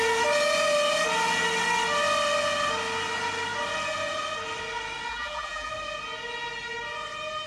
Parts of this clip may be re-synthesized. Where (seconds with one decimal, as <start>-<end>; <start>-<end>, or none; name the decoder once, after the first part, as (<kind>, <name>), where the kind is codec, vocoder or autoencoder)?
5.1-5.7 (vocoder, BigVGAN v2)

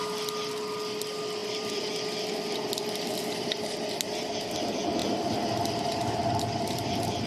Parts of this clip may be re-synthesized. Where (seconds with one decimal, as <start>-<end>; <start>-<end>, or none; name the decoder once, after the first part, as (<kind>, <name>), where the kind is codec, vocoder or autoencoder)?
1.4-4.3 (vocoder, BigVGAN v2)

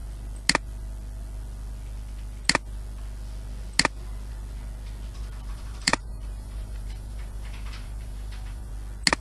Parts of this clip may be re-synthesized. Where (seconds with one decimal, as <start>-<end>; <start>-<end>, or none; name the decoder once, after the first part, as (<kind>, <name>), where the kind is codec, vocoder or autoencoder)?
5.5-8.7 (vocoder, BigVGAN v2)

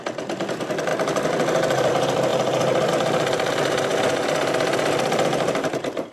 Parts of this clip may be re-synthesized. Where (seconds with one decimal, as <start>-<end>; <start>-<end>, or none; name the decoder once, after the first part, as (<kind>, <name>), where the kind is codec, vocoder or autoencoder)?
none